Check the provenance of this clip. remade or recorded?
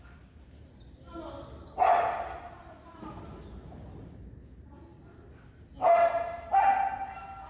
recorded